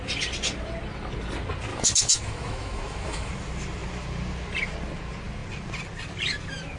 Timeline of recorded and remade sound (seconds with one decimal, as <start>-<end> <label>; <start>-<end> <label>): 0.0-1.7 recorded; 1.7-3.3 remade; 3.3-6.8 recorded